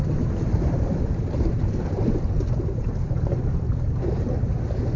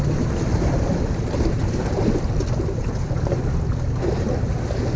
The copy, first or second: first